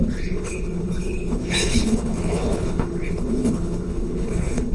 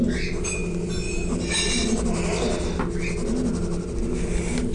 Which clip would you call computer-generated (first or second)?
first